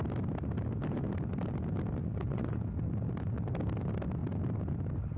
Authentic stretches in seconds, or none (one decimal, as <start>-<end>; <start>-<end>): 0.0-2.0; 2.6-5.2